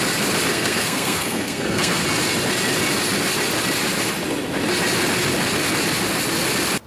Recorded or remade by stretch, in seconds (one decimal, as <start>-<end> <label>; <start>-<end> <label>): 0.0-0.5 recorded; 0.5-2.0 remade; 2.0-6.9 recorded